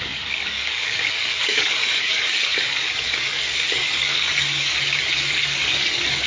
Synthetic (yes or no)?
yes